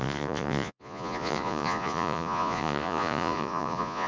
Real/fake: fake